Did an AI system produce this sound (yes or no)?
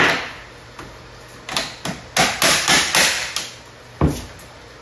no